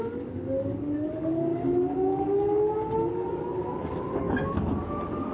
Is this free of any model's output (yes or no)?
no